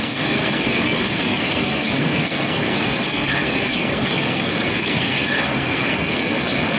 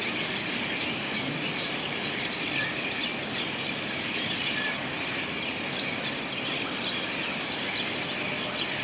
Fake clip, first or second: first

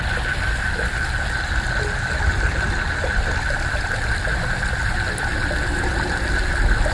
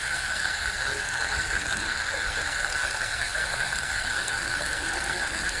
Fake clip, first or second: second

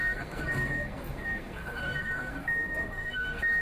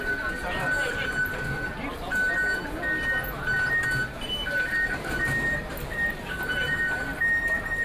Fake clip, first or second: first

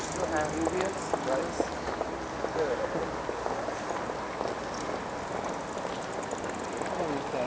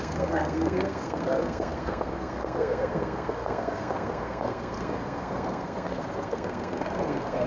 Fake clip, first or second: second